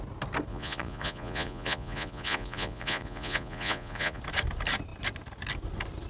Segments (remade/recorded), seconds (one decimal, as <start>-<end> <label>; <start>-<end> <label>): 0.0-0.5 recorded; 0.5-4.2 remade; 4.2-6.1 recorded